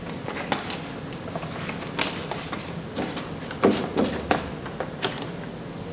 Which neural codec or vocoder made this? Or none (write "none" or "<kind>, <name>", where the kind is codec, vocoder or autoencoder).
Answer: none